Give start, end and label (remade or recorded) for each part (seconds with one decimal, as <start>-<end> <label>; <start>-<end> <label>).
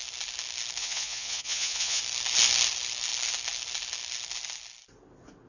0.0-0.8 recorded; 0.8-2.0 remade; 2.0-5.5 recorded